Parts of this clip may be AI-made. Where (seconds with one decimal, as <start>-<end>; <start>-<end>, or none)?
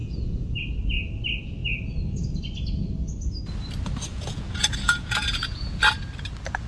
0.0-0.6; 4.1-5.8